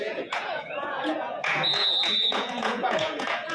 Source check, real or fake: fake